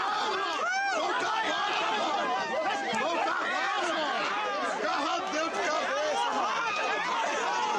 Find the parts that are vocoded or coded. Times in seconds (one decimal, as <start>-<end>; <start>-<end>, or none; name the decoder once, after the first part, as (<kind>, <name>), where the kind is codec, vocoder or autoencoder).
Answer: none